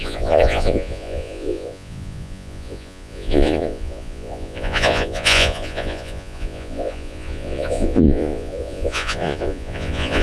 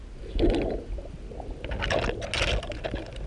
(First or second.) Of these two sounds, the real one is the second